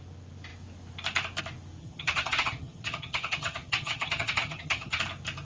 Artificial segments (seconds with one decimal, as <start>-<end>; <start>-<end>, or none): 1.8-5.0